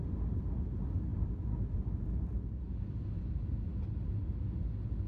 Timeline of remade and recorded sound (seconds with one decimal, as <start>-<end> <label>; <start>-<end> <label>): 0.0-3.7 remade; 3.7-5.1 recorded